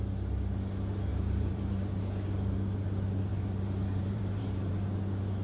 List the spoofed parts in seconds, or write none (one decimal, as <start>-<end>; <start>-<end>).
1.1-2.0; 3.3-4.7